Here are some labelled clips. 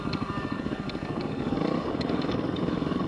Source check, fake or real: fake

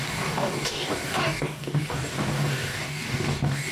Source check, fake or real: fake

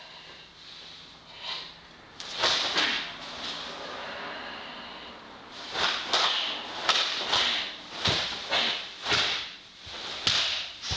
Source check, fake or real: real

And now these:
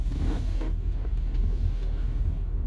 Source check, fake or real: fake